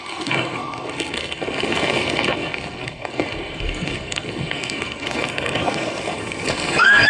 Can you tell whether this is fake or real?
fake